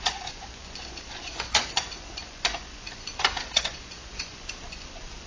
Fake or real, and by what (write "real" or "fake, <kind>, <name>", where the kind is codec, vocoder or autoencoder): fake, vocoder, Vocos